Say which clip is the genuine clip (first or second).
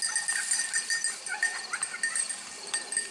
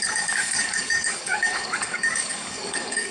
first